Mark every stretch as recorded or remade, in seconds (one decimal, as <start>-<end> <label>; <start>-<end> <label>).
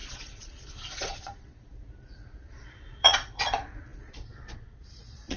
0.0-5.4 remade